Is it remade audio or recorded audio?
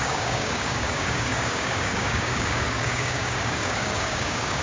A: remade